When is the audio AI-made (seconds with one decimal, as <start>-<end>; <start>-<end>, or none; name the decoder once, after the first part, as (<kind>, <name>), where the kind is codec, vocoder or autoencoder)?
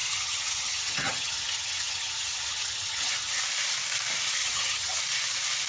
0.0-3.4 (vocoder, HiFi-GAN); 4.4-5.0